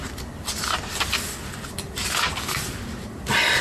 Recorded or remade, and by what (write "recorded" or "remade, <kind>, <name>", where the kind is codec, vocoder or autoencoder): remade, vocoder, BigVGAN v2